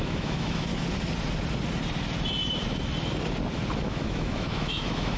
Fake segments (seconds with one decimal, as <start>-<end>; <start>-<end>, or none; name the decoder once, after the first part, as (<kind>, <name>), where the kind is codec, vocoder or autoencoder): 0.0-0.7 (autoencoder, DAC-VAE); 3.8-5.2